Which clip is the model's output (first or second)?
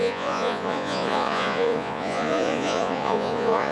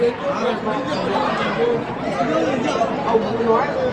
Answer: first